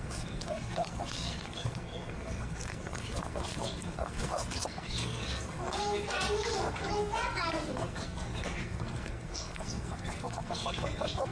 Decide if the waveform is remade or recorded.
remade